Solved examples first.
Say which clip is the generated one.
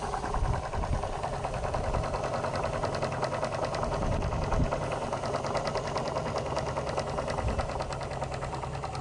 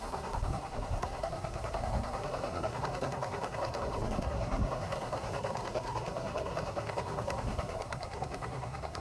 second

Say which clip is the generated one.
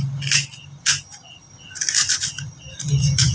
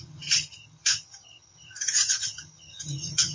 second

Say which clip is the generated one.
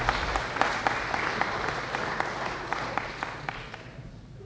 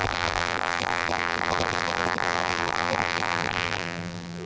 second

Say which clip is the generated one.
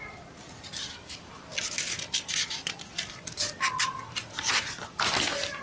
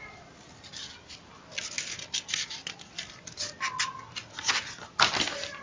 first